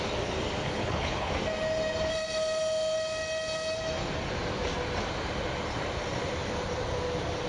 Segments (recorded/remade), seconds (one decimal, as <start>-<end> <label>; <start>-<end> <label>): 0.0-0.6 recorded; 0.6-1.3 remade; 1.3-7.5 recorded